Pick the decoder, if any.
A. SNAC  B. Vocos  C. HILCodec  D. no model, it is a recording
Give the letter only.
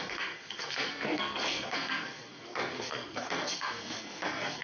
A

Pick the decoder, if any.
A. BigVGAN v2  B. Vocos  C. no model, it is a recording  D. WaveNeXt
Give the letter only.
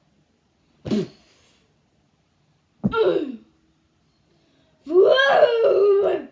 C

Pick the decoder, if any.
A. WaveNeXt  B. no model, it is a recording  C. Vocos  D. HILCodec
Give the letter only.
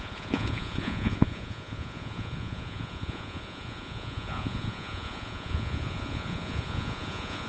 C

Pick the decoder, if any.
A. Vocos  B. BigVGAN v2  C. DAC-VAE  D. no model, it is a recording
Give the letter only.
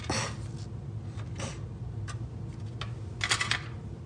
D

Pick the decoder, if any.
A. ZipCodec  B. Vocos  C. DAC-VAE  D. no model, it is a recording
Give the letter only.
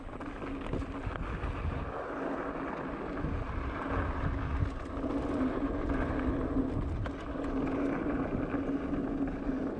D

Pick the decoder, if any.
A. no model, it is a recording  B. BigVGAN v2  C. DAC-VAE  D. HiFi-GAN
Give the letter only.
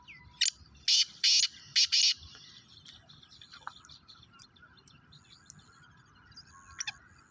A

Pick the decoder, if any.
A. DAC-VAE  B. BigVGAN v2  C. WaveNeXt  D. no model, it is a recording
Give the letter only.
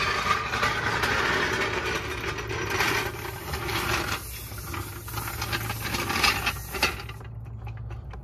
D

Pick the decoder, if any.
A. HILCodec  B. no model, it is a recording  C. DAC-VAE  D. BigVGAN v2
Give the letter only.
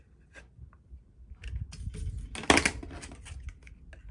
B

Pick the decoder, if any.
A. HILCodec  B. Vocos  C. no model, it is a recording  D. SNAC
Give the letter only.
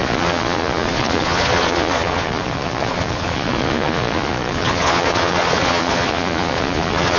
B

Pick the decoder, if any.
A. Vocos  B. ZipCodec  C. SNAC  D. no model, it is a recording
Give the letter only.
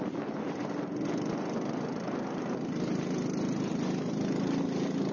D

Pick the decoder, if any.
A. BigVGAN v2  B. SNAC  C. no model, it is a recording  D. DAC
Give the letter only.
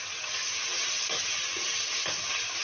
C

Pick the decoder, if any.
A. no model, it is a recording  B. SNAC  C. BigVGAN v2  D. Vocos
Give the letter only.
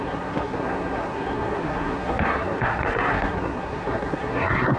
B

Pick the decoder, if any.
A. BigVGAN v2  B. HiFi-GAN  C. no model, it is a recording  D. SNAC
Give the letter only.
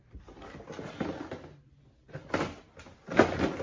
C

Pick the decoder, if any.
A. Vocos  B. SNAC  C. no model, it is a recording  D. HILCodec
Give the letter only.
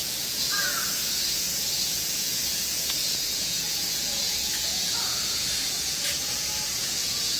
A